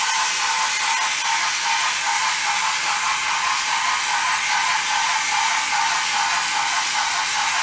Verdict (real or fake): real